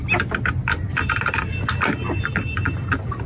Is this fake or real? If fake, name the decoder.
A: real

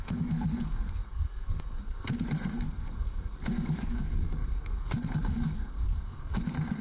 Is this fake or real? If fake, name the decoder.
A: fake, codec, SNAC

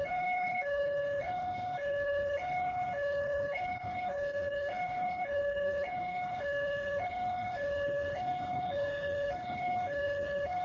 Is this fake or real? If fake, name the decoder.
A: fake, codec, HILCodec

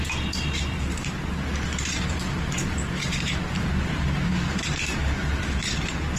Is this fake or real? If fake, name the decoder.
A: fake, vocoder, BigVGAN v2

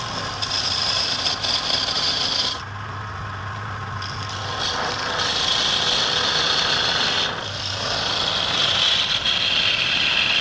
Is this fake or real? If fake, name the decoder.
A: real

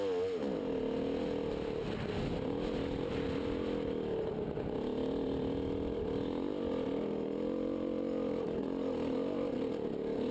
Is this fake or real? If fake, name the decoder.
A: real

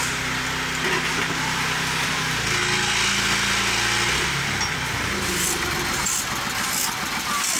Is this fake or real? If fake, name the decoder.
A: real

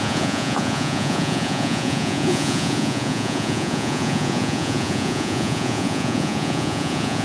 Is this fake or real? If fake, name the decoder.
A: fake, vocoder, Vocos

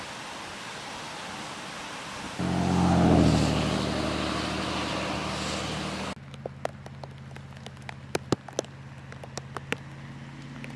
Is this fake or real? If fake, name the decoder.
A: real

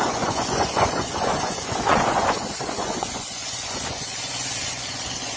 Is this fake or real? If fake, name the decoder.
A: fake, vocoder, Vocos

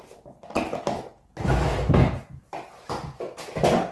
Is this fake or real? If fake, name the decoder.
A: real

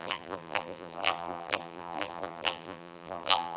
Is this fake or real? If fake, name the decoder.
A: fake, vocoder, BigVGAN v2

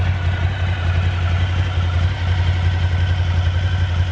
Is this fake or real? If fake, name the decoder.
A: real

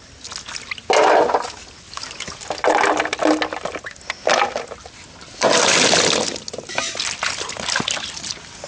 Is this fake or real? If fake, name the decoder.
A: real